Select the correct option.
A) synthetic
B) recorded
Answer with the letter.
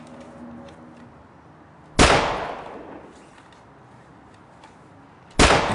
B